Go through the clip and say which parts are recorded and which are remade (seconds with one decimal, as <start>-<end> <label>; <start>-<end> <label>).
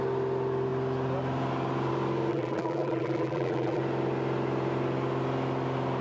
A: 0.0-2.3 recorded; 2.3-3.8 remade; 3.8-6.0 recorded